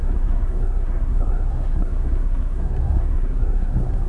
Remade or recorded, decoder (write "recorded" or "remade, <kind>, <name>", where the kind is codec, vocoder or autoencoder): remade, codec, SNAC